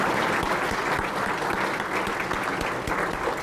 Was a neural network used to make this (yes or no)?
no